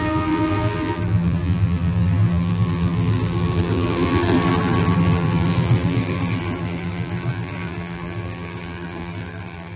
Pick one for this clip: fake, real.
fake